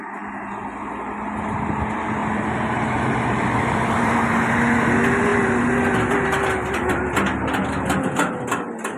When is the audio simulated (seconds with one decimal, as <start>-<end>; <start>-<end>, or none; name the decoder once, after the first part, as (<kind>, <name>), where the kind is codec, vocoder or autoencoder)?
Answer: 2.2-4.2 (vocoder, BigVGAN v2)

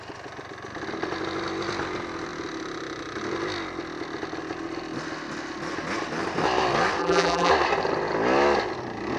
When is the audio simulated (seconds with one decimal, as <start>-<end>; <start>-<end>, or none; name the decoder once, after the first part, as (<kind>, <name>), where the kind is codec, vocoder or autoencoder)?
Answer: 7.0-7.5 (vocoder, BigVGAN v2)

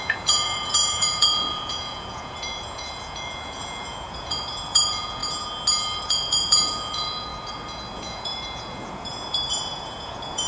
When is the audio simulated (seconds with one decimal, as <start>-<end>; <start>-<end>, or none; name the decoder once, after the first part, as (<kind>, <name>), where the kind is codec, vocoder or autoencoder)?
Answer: 0.0-5.2 (vocoder, Vocos); 6.0-7.3; 7.9-10.5